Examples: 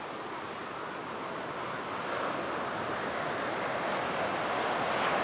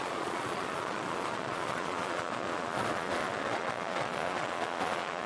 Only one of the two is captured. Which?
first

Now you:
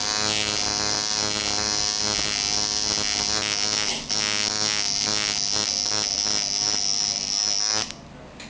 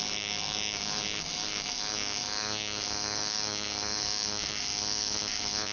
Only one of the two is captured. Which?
first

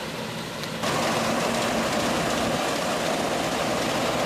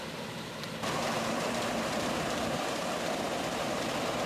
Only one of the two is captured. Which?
first